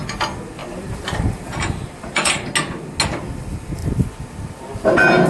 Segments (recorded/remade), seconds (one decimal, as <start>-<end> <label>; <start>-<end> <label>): 0.0-0.6 recorded; 0.6-2.5 remade; 2.5-5.3 recorded